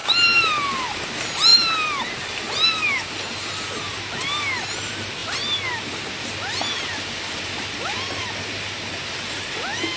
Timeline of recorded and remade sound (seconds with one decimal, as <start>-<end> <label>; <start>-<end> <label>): 0.0-10.0 recorded